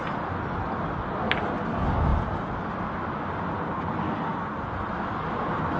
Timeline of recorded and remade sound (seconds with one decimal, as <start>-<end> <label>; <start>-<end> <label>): 0.0-5.8 recorded